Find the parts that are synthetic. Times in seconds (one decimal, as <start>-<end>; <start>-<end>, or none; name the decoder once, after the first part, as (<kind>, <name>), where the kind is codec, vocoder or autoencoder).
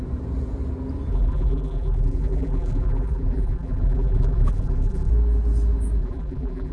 1.1-5.1 (vocoder, BigVGAN v2); 6.0-6.7